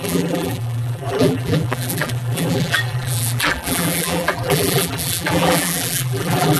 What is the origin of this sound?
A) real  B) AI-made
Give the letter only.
B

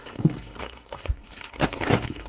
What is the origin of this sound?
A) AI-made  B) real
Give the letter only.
A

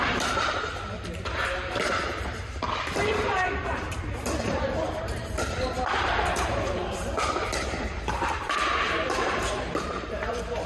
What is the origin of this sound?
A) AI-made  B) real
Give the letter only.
A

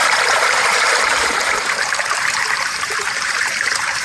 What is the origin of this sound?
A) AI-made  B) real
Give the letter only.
A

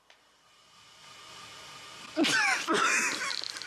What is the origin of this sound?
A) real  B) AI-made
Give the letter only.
A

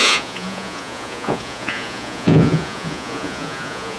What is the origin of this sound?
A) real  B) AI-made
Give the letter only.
B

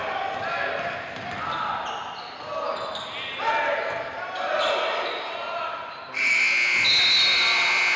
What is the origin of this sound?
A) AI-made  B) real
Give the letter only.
B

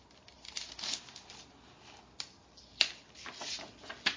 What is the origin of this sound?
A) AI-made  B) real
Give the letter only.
B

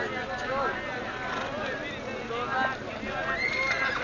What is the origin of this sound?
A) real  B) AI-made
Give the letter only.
A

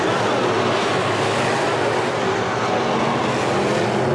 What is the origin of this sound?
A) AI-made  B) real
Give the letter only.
B